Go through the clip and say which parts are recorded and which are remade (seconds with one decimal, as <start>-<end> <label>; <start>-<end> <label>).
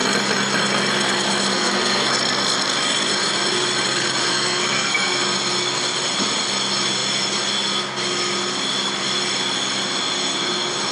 0.0-1.5 recorded; 1.5-2.1 remade; 2.1-4.2 recorded; 4.2-5.2 remade; 5.2-10.9 recorded